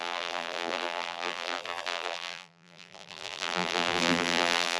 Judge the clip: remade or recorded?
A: remade